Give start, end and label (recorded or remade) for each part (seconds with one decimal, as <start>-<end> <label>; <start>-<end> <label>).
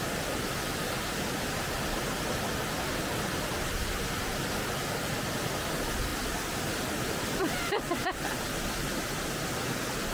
0.0-10.1 recorded